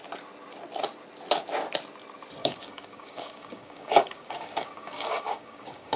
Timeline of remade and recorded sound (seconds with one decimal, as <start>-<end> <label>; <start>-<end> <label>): 0.0-2.4 recorded; 2.4-6.0 remade